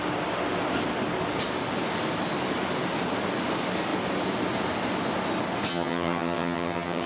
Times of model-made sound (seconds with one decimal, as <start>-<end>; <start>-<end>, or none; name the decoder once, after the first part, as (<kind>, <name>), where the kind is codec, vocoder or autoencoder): 5.7-7.1 (vocoder, HiFi-GAN)